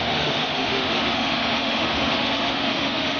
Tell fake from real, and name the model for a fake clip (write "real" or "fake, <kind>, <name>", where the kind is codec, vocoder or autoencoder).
fake, autoencoder, DAC-VAE